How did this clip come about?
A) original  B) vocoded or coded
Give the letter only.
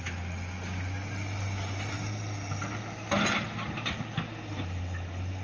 A